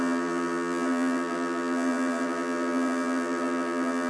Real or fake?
fake